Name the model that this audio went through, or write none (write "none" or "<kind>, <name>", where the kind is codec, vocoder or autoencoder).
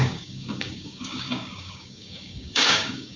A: codec, DAC